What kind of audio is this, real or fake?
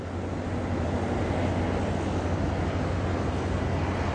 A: real